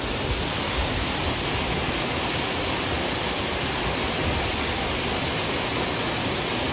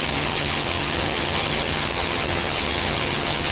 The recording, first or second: first